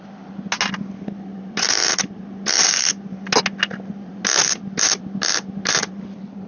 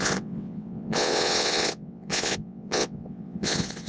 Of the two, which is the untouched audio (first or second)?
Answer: first